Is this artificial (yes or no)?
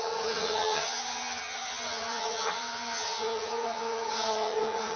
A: yes